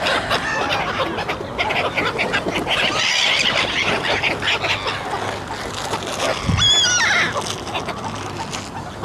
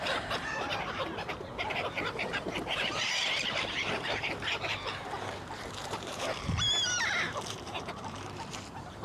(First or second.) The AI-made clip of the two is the second